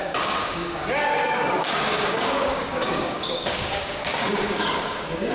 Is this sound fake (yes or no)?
yes